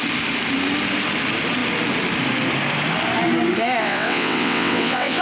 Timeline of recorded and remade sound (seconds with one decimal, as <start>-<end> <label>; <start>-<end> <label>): 0.0-3.8 recorded; 3.8-5.2 remade